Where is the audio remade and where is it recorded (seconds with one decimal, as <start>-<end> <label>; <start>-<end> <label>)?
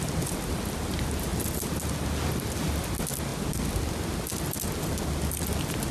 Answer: 0.0-5.9 recorded